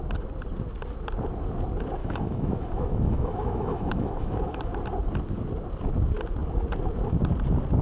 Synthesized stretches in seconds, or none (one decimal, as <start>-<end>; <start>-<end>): 2.0-4.7